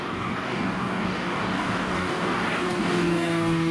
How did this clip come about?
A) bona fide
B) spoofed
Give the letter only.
B